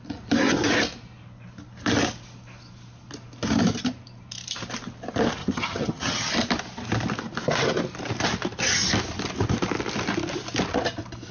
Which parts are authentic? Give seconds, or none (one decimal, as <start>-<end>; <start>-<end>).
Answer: 0.0-5.4; 6.3-11.3